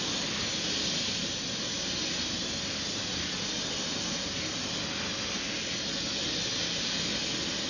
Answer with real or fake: real